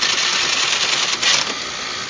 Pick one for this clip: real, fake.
real